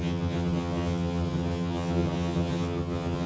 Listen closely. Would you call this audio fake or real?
fake